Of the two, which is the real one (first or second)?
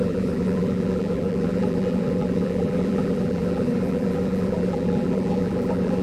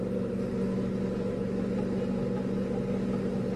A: second